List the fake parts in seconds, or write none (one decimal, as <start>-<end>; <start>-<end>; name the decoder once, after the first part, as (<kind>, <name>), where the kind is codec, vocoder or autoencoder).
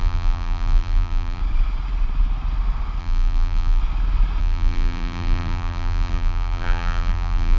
0.0-1.4 (vocoder, BigVGAN v2); 3.0-3.8; 4.4-7.6